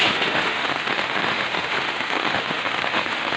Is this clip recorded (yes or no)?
no